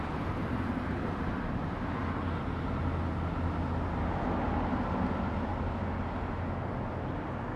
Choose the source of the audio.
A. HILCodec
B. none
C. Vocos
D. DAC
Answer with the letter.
B